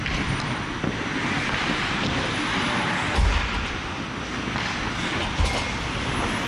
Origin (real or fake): real